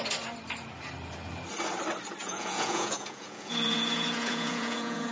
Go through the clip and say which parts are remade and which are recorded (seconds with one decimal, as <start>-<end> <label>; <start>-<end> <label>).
0.0-2.2 recorded; 2.2-5.1 remade